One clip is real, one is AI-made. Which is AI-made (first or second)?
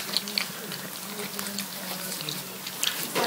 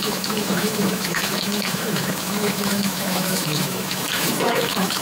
second